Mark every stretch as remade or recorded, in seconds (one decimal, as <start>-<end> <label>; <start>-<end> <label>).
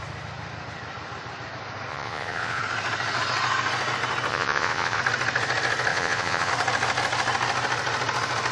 0.0-1.9 recorded; 1.9-2.6 remade; 2.6-4.3 recorded; 4.3-5.0 remade; 5.0-5.9 recorded; 5.9-6.5 remade; 6.5-8.5 recorded